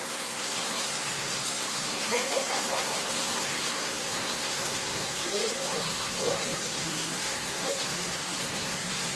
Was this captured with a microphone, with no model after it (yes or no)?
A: no